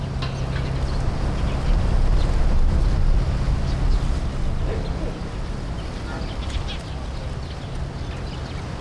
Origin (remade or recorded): recorded